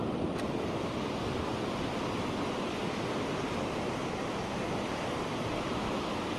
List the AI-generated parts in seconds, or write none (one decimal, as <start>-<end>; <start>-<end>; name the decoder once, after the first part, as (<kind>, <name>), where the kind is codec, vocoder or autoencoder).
none